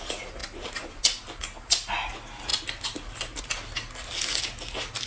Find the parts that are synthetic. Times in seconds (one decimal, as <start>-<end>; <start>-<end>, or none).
none